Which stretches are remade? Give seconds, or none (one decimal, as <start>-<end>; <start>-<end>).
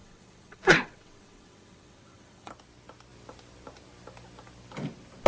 0.0-2.5